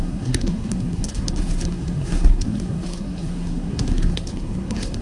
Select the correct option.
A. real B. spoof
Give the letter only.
B